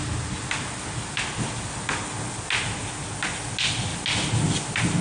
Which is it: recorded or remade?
recorded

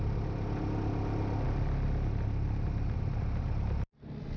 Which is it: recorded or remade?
recorded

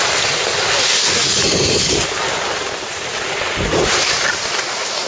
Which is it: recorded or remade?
remade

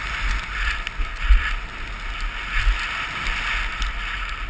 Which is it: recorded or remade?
recorded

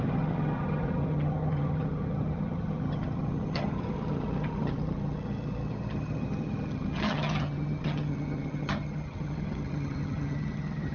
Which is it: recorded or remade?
remade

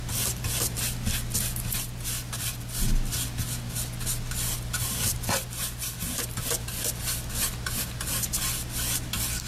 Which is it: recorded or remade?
recorded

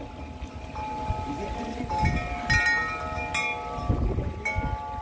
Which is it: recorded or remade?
recorded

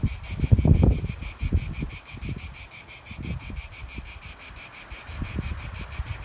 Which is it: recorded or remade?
remade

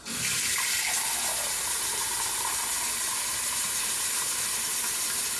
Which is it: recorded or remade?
recorded